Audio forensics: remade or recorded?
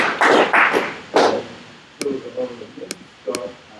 recorded